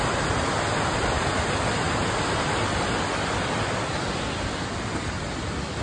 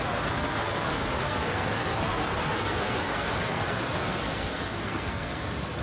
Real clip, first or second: first